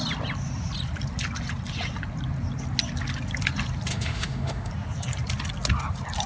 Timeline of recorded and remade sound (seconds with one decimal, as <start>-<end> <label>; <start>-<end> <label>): 0.0-3.9 recorded; 3.9-4.7 remade; 4.7-6.3 recorded